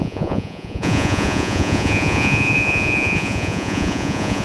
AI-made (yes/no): yes